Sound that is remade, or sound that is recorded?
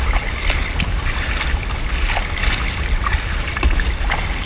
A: recorded